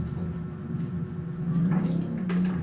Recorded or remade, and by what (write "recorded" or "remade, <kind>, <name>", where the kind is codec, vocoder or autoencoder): recorded